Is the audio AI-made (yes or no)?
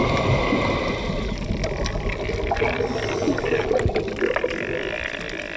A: no